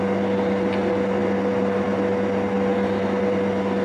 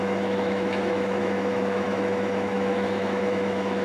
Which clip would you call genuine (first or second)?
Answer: first